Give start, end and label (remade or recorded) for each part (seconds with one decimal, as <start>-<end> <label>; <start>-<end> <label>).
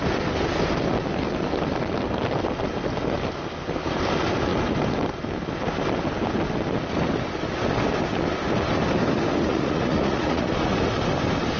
0.0-9.5 recorded; 9.5-10.5 remade; 10.5-11.6 recorded